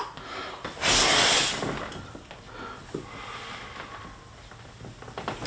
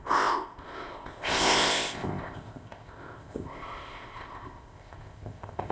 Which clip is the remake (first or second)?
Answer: second